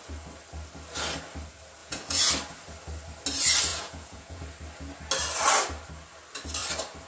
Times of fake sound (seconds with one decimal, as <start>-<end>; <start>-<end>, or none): 1.8-2.3; 3.7-4.4